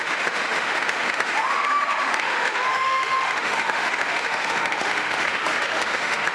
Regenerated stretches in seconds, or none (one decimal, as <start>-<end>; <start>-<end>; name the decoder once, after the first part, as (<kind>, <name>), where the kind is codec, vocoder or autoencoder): 0.0-6.3 (autoencoder, DAC-VAE)